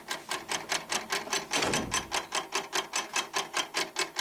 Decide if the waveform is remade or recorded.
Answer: recorded